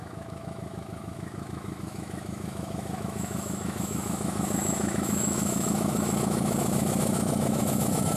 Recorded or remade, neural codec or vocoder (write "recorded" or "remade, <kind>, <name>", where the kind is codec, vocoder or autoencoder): remade, autoencoder, DAC-VAE